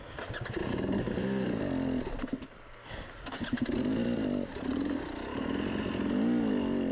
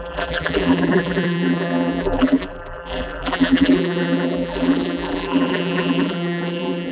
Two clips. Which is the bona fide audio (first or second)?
first